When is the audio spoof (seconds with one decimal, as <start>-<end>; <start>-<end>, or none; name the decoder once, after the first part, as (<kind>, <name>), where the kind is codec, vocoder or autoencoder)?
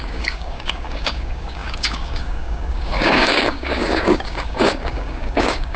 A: 0.0-5.8 (codec, DAC)